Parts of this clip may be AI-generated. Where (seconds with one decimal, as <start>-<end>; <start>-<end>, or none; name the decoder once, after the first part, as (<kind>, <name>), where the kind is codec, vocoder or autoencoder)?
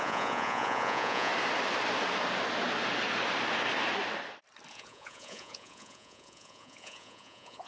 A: 0.0-1.3 (vocoder, Vocos); 4.7-7.7